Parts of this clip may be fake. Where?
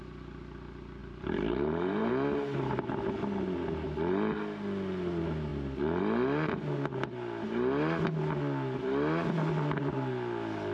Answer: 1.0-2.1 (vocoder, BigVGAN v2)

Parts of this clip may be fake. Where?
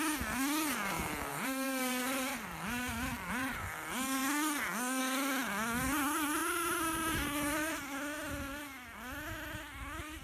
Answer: 1.3-3.7 (vocoder, BigVGAN v2); 6.4-7.8